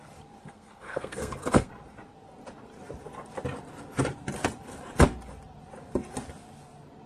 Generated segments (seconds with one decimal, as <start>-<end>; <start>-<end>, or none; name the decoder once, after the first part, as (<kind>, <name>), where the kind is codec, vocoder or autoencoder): 0.4-1.7 (codec, SNAC)